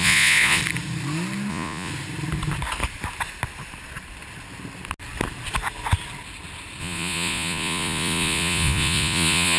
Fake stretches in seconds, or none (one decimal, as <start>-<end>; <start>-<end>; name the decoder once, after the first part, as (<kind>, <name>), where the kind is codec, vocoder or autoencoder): 0.0-0.6 (vocoder, Vocos); 1.5-1.9; 6.8-9.6